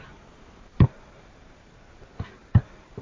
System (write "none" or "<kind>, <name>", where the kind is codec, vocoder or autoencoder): vocoder, BigVGAN v2